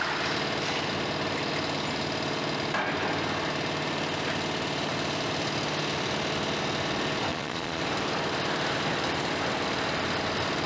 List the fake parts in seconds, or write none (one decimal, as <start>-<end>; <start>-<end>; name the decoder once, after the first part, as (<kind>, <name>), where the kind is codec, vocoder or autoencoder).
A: 7.3-7.8 (vocoder, Vocos)